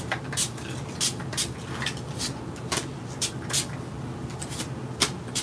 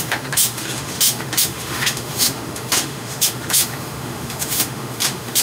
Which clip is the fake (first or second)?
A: second